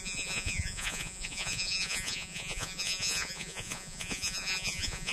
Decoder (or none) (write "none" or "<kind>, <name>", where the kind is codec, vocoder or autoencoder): vocoder, Vocos